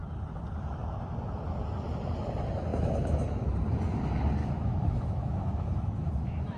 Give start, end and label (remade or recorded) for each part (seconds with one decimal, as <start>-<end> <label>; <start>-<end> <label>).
0.0-2.7 recorded; 2.7-3.5 remade; 3.5-4.4 recorded; 4.4-6.6 remade